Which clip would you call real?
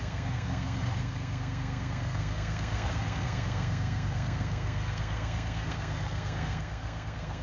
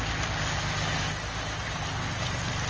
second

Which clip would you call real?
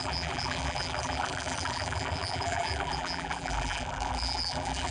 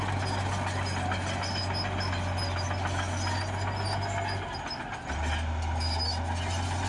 second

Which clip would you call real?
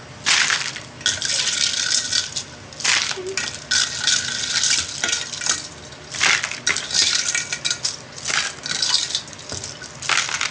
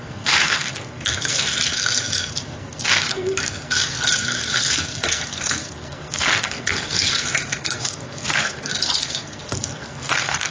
first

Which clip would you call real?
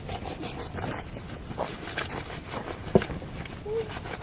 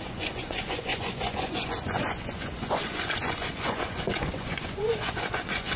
first